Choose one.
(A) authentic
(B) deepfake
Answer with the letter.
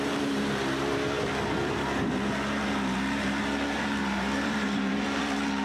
B